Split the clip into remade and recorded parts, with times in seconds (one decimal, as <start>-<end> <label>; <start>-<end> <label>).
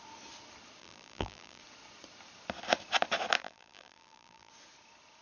0.0-0.8 recorded; 0.8-1.6 remade; 1.6-3.4 recorded; 3.4-4.5 remade; 4.5-5.2 recorded